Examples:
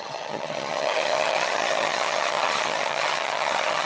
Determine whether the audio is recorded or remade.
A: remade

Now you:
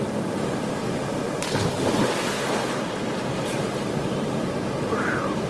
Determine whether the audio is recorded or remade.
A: recorded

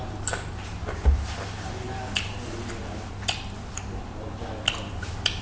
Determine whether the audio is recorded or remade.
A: recorded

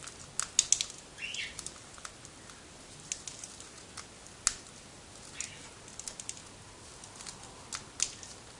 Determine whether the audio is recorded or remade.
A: recorded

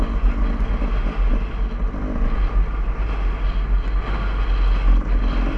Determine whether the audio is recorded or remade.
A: recorded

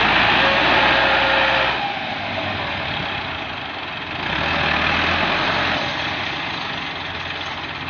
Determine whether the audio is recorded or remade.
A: recorded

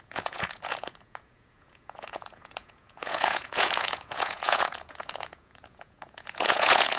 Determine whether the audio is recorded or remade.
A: remade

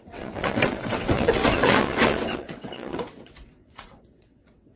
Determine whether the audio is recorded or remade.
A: remade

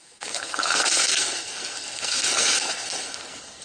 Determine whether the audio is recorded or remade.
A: remade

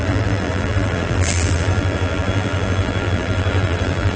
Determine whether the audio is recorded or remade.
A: remade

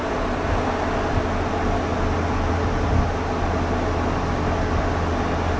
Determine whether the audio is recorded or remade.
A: recorded